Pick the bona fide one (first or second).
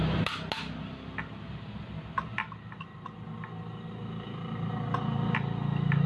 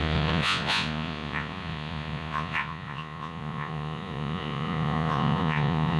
first